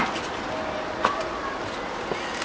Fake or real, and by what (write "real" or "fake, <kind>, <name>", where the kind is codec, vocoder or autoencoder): real